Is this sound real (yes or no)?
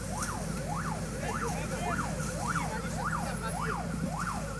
yes